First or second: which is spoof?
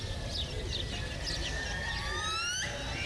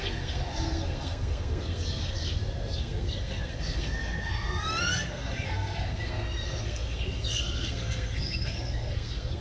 second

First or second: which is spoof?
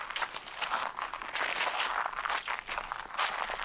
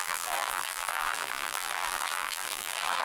second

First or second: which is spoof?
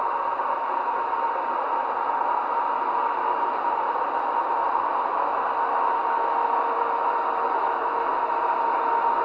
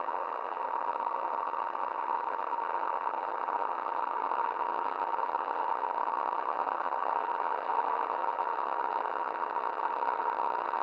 second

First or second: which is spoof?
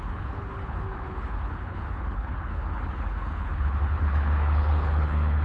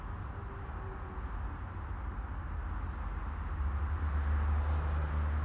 first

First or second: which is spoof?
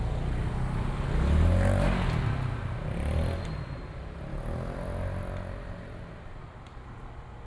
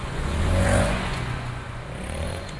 second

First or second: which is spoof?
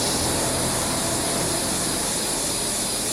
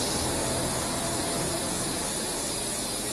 first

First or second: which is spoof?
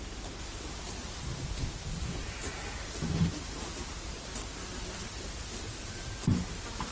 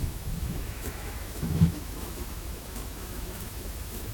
second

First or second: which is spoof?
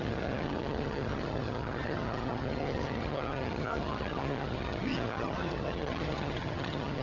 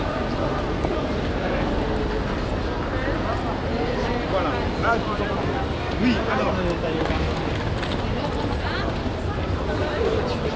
first